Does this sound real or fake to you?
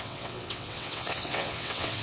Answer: fake